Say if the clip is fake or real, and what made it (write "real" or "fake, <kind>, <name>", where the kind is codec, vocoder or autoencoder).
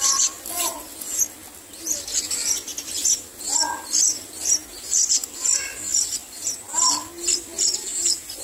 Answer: real